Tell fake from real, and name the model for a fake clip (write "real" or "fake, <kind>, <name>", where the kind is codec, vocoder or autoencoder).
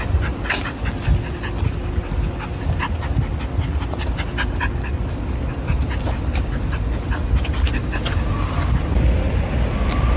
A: real